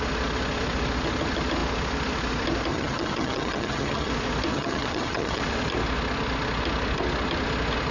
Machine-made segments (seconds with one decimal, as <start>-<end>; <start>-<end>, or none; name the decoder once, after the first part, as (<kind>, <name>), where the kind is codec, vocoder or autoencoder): 2.7-4.1 (vocoder, HiFi-GAN); 4.5-5.4